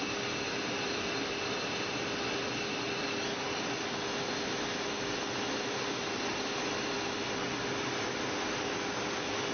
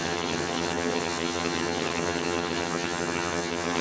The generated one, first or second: second